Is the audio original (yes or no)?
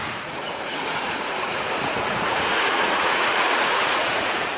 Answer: no